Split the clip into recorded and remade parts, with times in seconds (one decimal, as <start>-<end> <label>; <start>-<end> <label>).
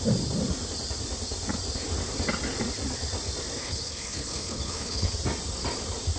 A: 0.0-3.6 recorded; 3.6-5.1 remade; 5.1-6.2 recorded